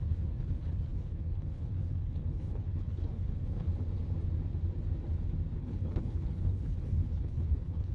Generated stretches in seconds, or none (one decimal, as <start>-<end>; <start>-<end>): 0.0-3.7; 5.6-7.9